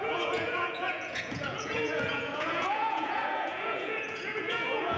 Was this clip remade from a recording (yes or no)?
yes